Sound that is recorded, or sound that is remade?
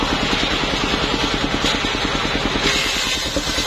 recorded